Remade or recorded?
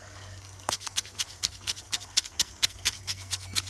remade